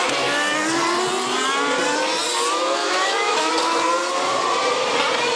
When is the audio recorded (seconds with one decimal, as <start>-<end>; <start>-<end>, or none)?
0.0-2.8; 3.5-5.4